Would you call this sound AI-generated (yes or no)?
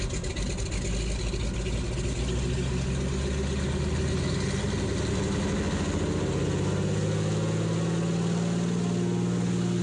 no